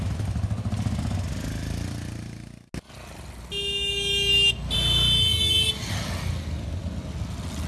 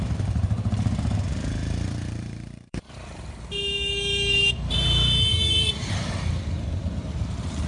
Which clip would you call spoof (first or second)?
second